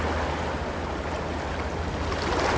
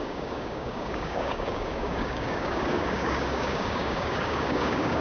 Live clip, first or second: first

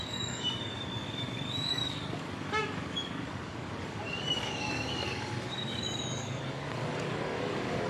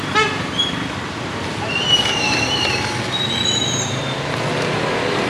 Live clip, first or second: second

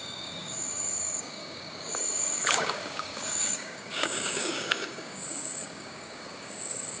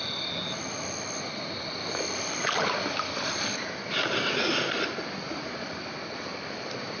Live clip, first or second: second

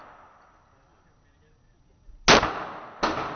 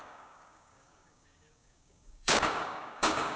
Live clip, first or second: first